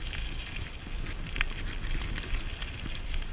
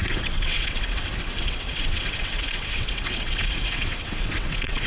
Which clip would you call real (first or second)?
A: first